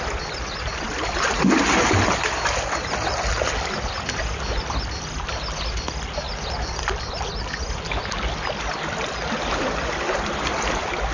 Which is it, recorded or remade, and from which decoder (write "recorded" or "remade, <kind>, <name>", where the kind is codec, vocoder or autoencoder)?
recorded